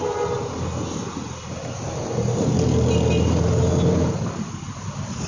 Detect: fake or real real